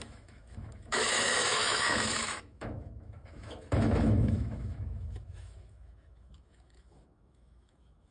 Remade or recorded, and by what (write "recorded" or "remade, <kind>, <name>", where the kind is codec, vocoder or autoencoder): remade, autoencoder, DAC-VAE